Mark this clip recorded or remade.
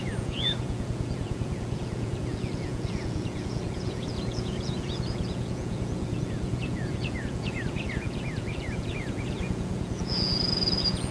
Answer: remade